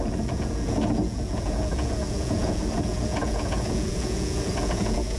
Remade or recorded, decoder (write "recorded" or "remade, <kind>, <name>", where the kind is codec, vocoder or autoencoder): remade, vocoder, Vocos